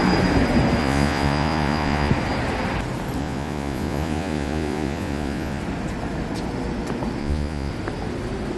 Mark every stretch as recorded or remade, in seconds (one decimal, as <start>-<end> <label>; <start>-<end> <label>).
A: 0.0-0.8 recorded; 0.8-2.1 remade; 2.1-3.2 recorded; 3.2-5.6 remade; 5.6-7.2 recorded; 7.2-7.7 remade; 7.7-8.6 recorded